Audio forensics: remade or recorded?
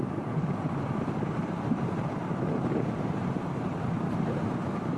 remade